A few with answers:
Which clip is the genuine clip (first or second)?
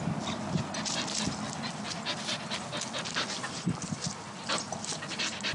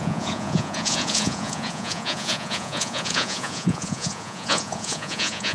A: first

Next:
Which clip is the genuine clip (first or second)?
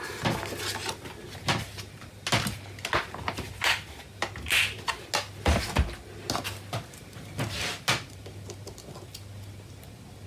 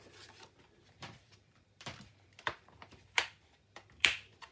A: first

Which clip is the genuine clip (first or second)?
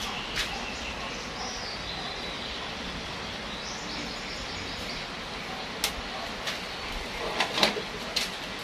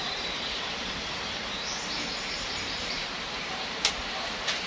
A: first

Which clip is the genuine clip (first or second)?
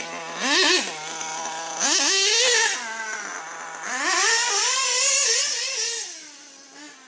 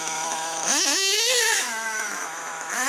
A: first